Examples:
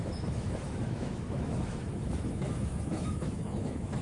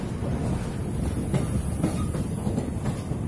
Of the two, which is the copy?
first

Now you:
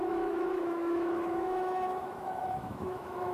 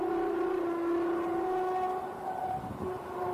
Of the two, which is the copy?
first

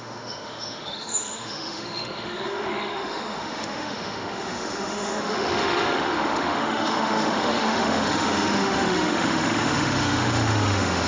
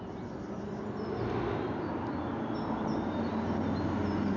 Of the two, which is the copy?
first